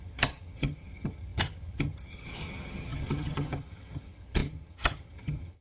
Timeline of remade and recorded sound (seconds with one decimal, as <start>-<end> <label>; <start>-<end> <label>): 0.0-5.6 remade